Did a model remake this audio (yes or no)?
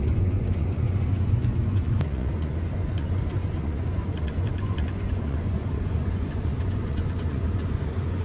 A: yes